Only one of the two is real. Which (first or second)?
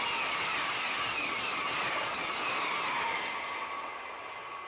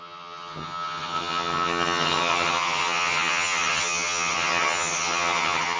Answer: first